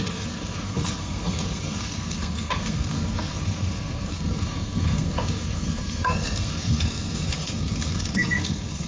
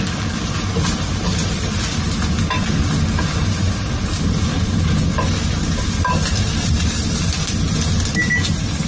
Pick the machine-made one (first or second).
first